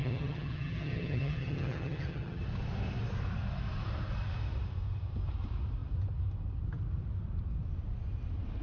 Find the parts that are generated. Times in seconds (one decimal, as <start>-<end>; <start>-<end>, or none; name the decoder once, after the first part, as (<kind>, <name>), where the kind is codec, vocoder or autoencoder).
0.0-2.4 (vocoder, HiFi-GAN)